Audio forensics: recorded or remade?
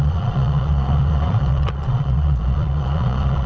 remade